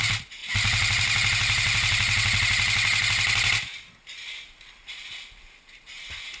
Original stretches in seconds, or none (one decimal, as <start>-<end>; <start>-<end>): 0.0-6.4